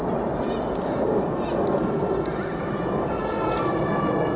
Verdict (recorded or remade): recorded